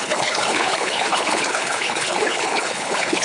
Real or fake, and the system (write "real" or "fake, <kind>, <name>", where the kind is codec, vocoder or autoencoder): fake, codec, HILCodec